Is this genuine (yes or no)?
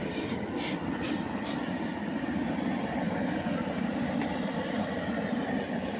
no